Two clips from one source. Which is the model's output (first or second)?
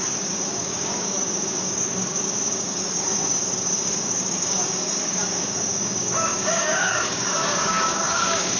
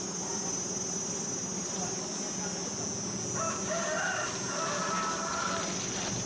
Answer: first